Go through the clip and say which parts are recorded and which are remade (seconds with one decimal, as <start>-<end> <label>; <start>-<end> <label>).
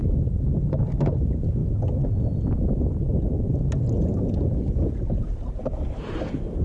0.0-1.6 remade; 1.6-5.6 recorded; 5.6-6.6 remade